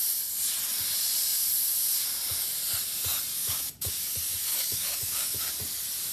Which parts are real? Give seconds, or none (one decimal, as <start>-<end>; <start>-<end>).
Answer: 0.0-3.4; 4.0-4.5; 5.5-6.1